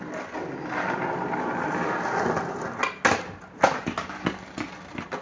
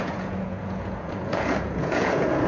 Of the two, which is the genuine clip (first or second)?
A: first